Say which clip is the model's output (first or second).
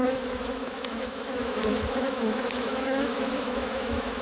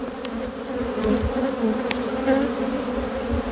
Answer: first